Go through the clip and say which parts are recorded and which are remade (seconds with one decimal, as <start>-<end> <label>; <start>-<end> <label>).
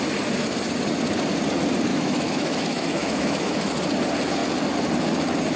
0.0-1.9 recorded; 1.9-3.7 remade; 3.7-5.6 recorded